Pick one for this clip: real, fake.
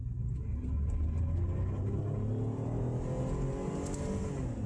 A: real